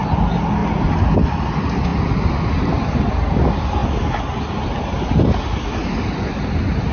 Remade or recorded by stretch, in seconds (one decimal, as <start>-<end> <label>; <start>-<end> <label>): 0.0-6.9 recorded